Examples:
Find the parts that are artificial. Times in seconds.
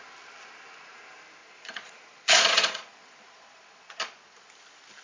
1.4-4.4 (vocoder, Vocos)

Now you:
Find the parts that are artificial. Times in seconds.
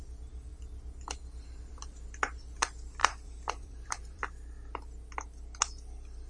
3.0-4.2 (vocoder, BigVGAN v2)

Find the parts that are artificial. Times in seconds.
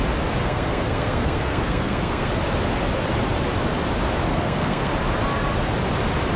0.4-2.3 (codec, SNAC); 4.3-4.9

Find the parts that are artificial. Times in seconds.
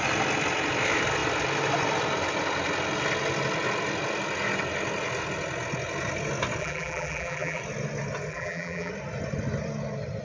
6.6-7.6 (vocoder, BigVGAN v2); 8.3-8.9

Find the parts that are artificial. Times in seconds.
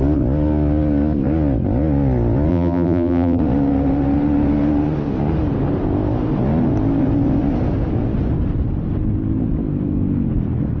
2.5-3.4 (vocoder, BigVGAN v2)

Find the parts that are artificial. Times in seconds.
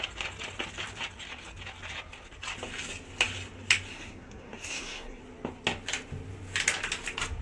3.9-5.2 (codec, SNAC)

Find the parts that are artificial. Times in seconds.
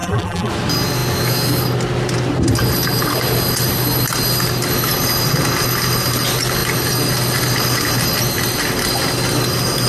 0.0-0.5 (vocoder, BigVGAN v2)